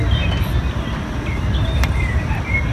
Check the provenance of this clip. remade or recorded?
recorded